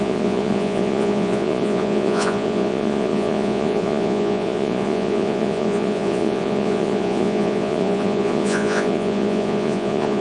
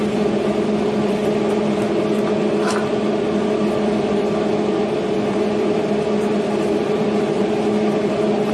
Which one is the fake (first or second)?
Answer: first